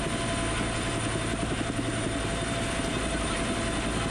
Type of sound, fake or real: real